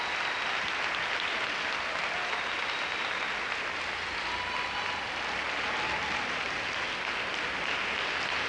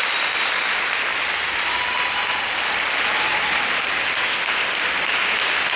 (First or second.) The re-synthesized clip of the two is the second